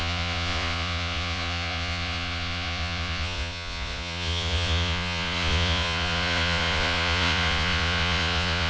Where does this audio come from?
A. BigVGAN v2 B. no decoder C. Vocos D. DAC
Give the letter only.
C